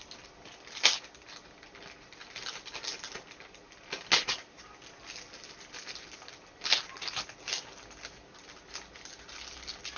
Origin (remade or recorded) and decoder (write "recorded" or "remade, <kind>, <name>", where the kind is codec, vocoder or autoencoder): recorded